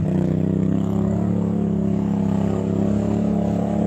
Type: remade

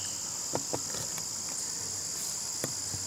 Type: recorded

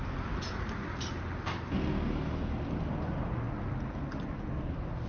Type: recorded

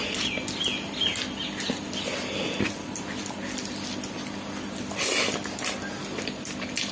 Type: recorded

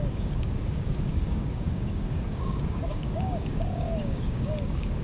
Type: remade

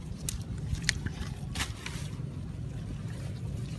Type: recorded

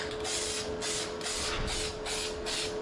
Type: recorded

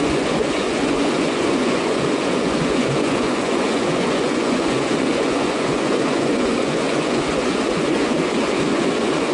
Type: remade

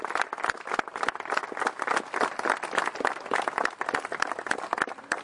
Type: recorded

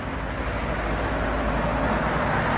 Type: recorded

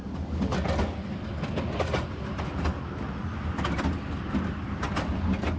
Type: recorded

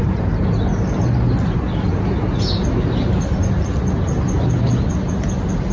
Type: recorded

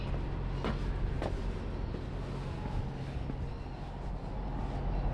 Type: recorded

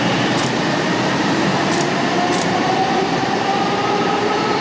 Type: remade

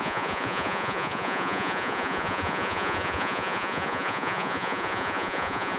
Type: remade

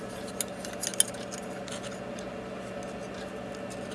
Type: recorded